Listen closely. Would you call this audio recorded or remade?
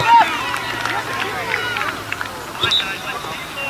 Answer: recorded